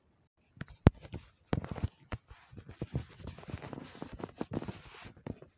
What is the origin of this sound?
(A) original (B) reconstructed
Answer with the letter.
A